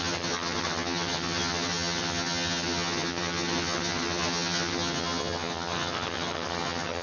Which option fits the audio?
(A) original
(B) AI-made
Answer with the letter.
B